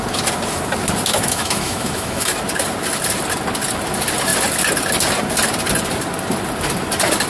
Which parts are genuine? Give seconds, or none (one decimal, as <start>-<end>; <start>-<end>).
0.0-1.1; 2.4-7.3